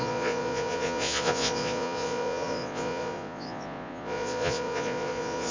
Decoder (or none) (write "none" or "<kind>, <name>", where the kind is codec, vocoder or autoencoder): vocoder, Vocos